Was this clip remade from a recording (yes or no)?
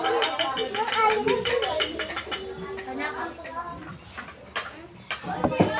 no